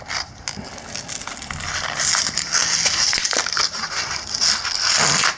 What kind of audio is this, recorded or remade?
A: recorded